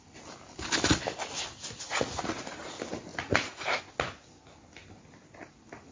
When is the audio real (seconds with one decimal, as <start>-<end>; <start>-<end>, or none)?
0.0-1.9; 2.6-3.1; 3.8-5.9